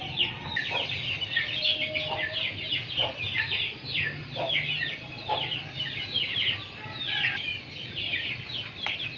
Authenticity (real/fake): real